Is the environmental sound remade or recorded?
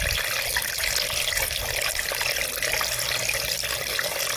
recorded